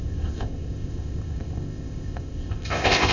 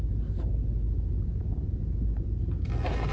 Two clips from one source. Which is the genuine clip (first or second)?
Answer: second